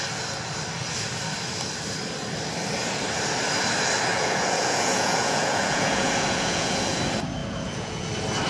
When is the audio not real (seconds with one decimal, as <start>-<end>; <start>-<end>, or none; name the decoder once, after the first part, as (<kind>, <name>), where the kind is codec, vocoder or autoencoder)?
4.1-7.0 (vocoder, Vocos); 7.4-8.1